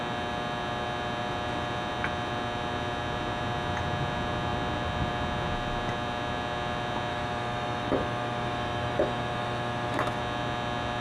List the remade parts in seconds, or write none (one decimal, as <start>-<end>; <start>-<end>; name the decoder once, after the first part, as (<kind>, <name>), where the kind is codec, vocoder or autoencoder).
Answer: 7.1-10.2 (autoencoder, DAC-VAE)